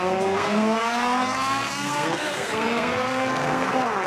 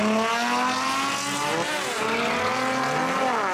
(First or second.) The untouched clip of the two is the second